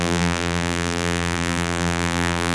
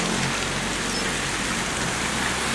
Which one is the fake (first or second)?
first